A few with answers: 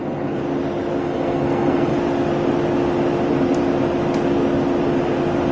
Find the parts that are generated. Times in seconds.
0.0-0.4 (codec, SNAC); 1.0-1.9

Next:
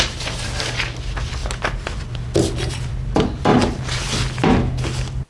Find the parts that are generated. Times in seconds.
none

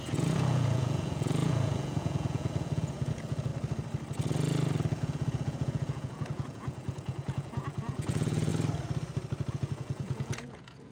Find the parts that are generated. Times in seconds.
0.0-3.5 (vocoder, Vocos); 4.9-8.5; 9.5-10.9

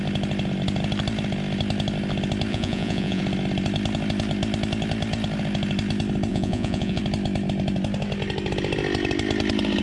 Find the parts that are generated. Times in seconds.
2.5-3.2 (vocoder, Vocos); 6.3-7.0

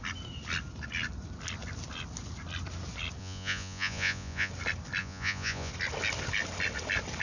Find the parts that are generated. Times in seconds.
3.2-4.5 (vocoder, Vocos); 5.0-5.7

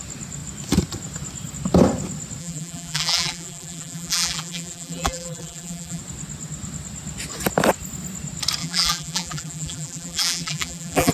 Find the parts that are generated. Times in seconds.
2.4-6.0 (vocoder, BigVGAN v2); 8.6-11.1